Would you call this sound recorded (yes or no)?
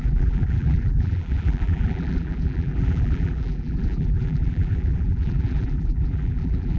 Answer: no